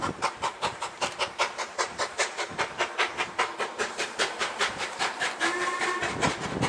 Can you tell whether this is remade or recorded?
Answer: remade